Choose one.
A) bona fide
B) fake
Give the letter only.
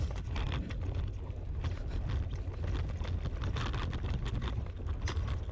A